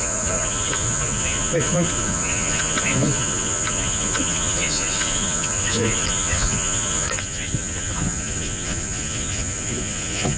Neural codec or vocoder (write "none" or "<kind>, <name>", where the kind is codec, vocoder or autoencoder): vocoder, Vocos